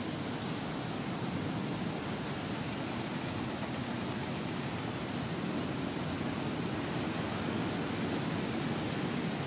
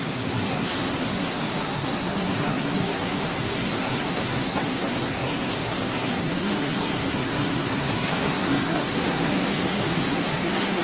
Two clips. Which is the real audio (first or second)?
first